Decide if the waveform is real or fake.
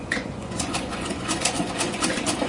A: fake